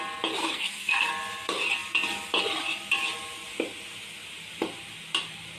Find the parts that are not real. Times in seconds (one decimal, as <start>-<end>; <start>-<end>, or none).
0.4-1.1